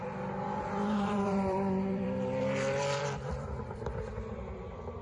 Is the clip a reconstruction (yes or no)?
yes